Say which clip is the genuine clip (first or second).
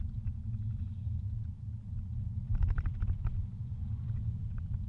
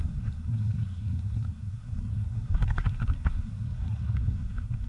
first